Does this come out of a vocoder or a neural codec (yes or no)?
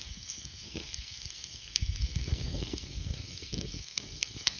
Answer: yes